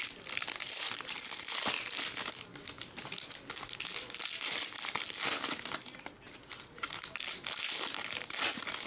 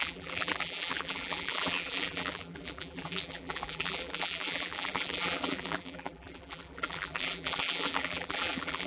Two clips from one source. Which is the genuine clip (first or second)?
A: first